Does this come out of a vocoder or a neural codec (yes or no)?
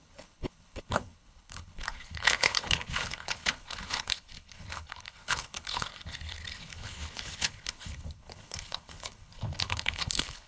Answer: yes